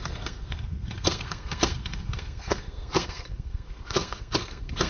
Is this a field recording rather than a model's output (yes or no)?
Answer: no